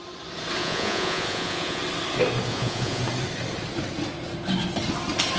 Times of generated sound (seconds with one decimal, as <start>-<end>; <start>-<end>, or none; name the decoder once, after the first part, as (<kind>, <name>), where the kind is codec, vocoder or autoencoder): 0.6-1.8 (vocoder, Vocos); 2.5-3.0